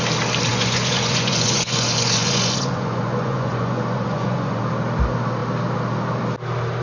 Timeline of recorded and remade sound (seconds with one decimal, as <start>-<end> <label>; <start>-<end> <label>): 0.0-0.5 recorded; 0.5-4.6 remade; 4.6-6.8 recorded